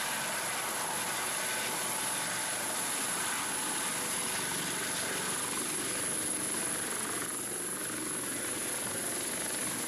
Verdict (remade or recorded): recorded